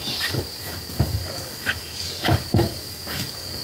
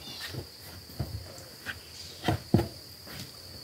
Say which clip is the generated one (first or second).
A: first